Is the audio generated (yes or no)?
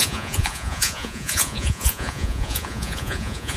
yes